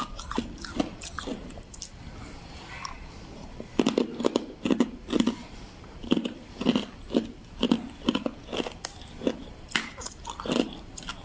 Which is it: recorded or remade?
recorded